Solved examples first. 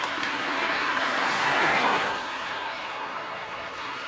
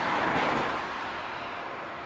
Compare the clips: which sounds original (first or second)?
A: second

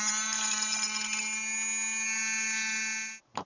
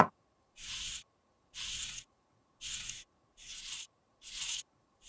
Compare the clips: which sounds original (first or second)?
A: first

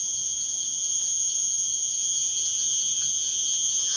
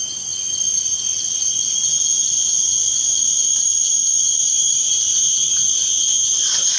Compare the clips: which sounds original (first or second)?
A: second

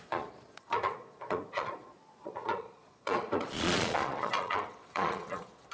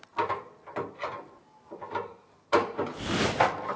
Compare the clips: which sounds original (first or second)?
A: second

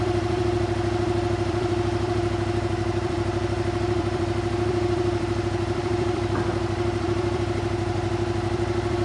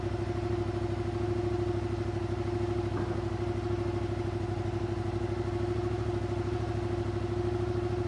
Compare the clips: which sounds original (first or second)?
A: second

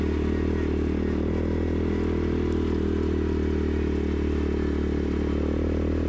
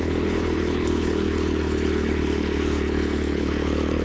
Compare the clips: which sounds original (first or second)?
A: first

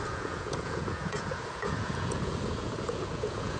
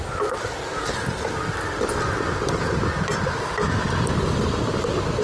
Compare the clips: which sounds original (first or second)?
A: second